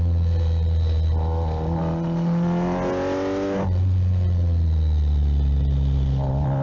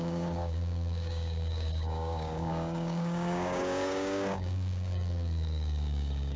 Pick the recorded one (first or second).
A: first